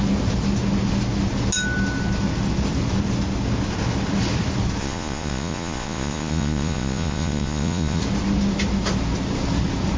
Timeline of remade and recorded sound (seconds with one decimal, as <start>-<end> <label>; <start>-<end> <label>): 0.0-4.8 recorded; 4.8-8.0 remade; 8.0-10.0 recorded